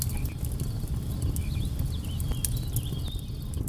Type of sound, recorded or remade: recorded